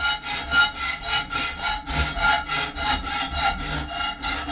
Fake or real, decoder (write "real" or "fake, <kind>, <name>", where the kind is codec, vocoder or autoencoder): real